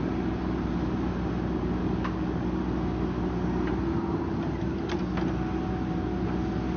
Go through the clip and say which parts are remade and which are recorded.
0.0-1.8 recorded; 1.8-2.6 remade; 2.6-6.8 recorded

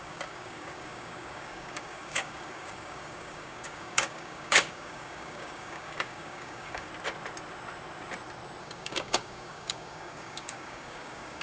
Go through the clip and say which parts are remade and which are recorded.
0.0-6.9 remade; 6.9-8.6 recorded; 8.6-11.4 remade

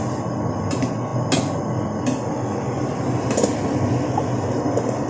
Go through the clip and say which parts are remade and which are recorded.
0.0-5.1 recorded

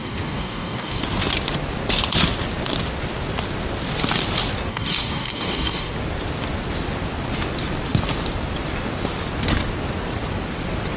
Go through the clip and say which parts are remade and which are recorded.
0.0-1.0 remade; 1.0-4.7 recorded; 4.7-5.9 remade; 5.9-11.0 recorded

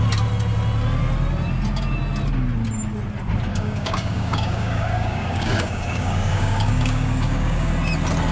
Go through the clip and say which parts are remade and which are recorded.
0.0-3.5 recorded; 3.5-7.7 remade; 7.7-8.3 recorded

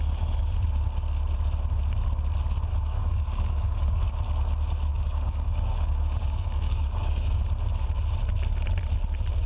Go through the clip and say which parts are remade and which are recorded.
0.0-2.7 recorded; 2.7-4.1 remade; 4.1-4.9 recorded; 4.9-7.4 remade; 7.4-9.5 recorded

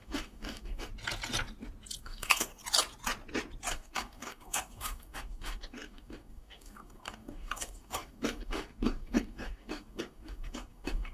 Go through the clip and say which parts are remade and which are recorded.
0.0-0.9 remade; 0.9-2.0 recorded; 2.0-2.6 remade; 2.6-3.7 recorded; 3.7-11.1 remade